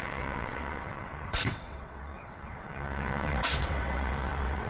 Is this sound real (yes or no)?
no